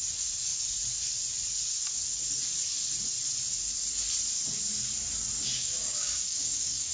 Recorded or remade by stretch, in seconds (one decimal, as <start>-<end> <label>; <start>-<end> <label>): 0.0-5.4 recorded; 5.4-6.9 remade